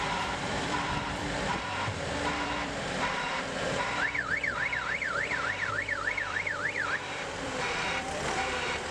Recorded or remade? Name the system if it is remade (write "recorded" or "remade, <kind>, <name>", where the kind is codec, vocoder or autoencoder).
remade, vocoder, BigVGAN v2